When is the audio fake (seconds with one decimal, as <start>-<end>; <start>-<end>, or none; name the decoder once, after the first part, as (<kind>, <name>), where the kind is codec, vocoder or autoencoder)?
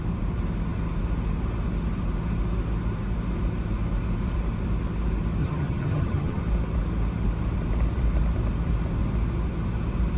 5.4-6.4 (vocoder, HiFi-GAN)